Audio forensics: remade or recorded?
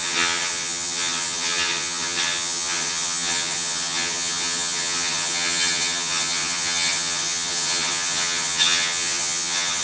remade